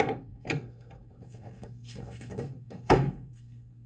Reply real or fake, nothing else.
fake